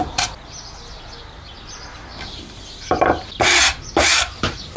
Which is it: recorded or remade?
recorded